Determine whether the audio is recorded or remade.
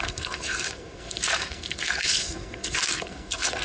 remade